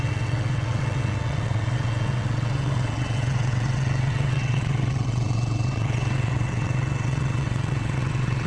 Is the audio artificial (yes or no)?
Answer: yes